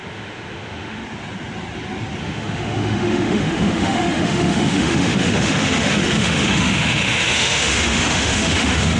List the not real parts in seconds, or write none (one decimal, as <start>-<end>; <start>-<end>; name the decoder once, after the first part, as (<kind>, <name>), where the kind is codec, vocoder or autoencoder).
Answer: 0.0-1.0 (autoencoder, DAC-VAE); 2.2-9.0